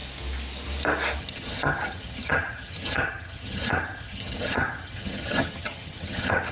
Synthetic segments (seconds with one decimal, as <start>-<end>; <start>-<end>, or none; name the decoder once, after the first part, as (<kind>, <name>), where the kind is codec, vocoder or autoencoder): 1.2-6.5 (vocoder, HiFi-GAN)